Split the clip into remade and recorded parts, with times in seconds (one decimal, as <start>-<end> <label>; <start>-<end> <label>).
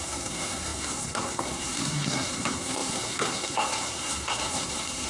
0.0-5.1 remade